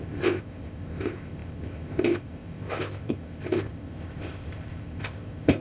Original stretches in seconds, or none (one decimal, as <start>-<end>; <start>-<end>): none